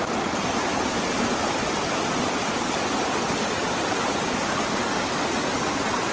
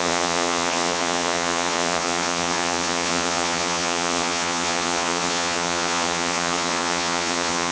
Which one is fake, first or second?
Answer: second